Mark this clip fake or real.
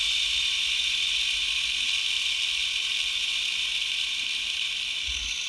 fake